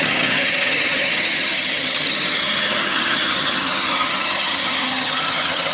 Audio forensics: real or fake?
fake